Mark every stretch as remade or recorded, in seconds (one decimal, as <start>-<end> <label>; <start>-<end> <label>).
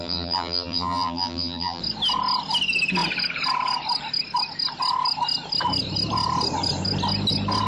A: 0.0-1.8 remade; 1.8-7.7 recorded